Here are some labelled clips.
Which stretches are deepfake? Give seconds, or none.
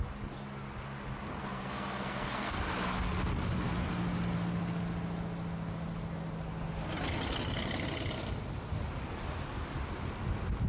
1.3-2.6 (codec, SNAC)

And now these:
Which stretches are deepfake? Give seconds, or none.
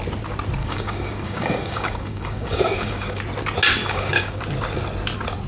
0.6-3.2 (codec, DAC); 3.8-4.4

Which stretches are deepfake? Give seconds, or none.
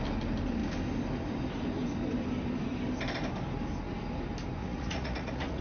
4.6-5.6 (vocoder, Vocos)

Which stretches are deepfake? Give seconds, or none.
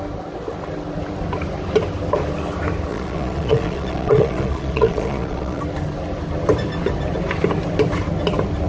2.9-5.6 (vocoder, Vocos)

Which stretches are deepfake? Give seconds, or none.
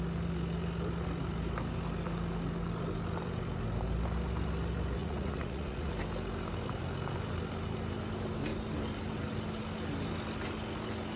5.0-5.9 (vocoder, Vocos)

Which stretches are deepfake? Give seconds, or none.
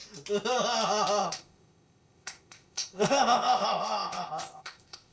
1.2-5.1 (codec, ZipCodec)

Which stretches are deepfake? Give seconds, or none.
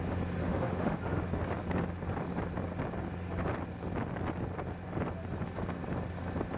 0.4-1.0 (autoencoder, DAC-VAE)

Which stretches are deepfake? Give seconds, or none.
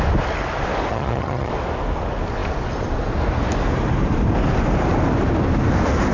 0.9-1.5 (vocoder, HiFi-GAN)